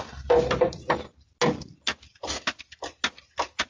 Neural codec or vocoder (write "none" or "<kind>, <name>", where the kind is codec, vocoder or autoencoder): none